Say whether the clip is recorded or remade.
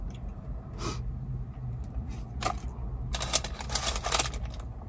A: recorded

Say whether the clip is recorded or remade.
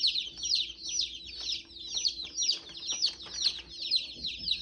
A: recorded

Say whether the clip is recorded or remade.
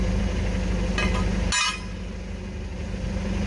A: recorded